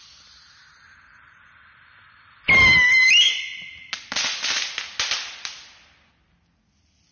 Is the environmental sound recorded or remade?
recorded